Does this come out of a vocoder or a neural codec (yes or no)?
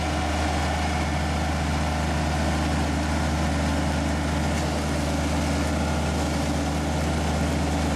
no